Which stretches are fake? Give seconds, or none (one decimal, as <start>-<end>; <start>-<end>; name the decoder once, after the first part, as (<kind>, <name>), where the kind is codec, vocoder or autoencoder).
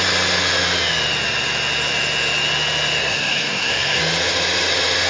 3.0-4.0 (codec, SNAC)